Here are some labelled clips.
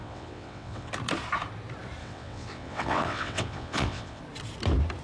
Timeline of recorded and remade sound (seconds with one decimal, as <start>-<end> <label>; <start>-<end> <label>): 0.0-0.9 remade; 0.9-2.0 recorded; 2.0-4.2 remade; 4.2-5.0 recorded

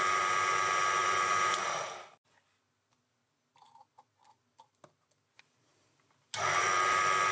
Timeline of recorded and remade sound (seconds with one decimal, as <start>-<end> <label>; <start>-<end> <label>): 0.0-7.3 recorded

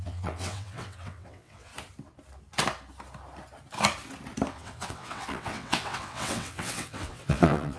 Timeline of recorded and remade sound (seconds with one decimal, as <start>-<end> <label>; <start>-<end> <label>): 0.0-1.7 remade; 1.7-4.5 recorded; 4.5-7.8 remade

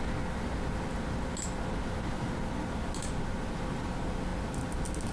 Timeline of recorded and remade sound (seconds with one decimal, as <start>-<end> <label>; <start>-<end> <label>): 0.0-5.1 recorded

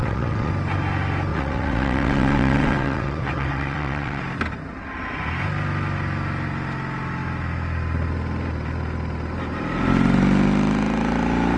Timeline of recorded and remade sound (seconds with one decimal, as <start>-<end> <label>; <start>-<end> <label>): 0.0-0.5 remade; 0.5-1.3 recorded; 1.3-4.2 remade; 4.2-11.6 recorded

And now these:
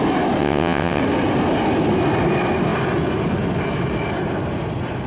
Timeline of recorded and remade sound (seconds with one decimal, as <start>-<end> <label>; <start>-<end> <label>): 0.0-0.4 recorded; 0.4-1.0 remade; 1.0-5.1 recorded

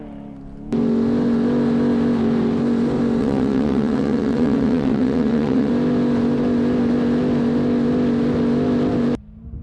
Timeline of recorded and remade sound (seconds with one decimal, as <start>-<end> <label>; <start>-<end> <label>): 0.0-3.2 recorded; 3.2-5.7 remade; 5.7-9.6 recorded